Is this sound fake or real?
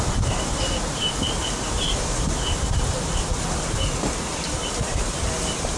real